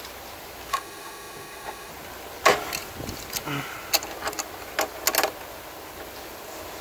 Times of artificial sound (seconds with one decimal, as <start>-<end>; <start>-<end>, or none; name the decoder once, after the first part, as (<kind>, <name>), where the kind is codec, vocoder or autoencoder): 0.7-1.9 (autoencoder, DAC-VAE)

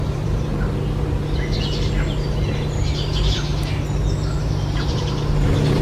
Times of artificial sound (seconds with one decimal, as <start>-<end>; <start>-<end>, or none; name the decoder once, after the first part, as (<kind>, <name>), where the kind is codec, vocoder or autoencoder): 0.0-0.5 (vocoder, BigVGAN v2); 2.3-3.5; 4.9-5.8

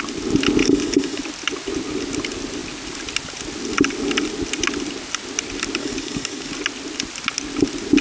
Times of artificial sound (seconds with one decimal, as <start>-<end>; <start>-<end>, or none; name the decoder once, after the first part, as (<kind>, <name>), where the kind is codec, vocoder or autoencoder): 0.6-1.2 (codec, DAC); 5.8-6.5